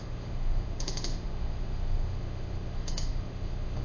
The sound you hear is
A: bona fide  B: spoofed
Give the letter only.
B